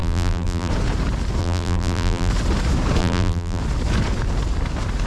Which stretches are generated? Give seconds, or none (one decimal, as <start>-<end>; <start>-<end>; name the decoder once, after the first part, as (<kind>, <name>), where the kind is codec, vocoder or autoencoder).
0.0-0.7 (vocoder, BigVGAN v2); 1.4-2.3; 3.0-3.6